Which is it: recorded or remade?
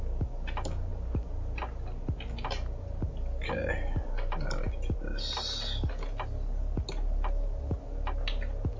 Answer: recorded